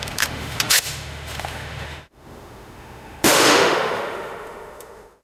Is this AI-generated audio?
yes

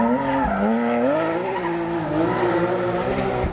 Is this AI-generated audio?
no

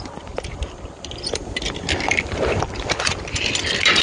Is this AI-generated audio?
yes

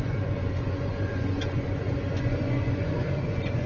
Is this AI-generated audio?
yes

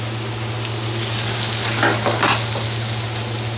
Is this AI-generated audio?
no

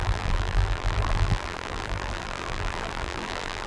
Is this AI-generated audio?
yes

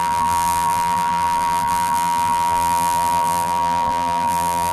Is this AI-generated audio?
yes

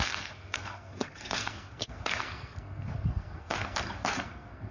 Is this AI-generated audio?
yes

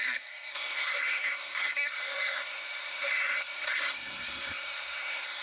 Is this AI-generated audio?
yes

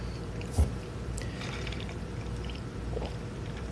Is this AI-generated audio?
yes